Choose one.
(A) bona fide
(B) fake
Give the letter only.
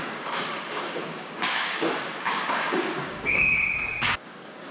B